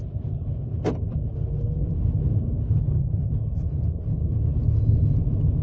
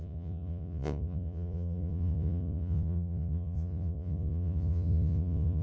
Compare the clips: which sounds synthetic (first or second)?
second